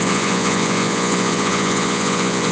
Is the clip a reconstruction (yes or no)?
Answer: yes